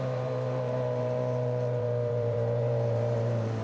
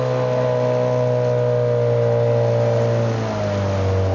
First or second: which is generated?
first